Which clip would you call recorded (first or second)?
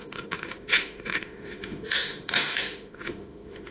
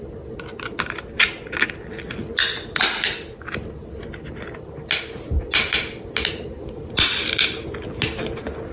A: second